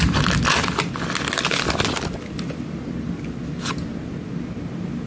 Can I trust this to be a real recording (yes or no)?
yes